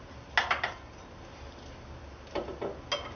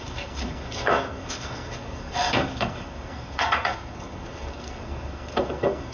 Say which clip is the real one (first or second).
first